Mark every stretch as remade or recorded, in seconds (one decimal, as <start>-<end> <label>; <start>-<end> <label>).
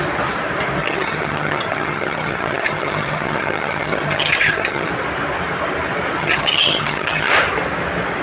0.0-0.8 recorded; 0.8-4.9 remade; 4.9-6.2 recorded; 6.2-7.3 remade; 7.3-8.2 recorded